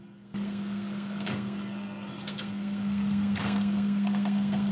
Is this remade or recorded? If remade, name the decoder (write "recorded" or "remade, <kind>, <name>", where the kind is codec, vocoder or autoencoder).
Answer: remade, codec, SNAC